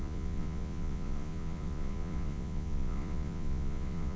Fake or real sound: fake